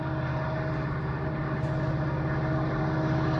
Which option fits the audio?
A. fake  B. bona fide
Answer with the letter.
B